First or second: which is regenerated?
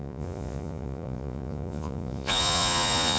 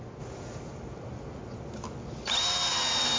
first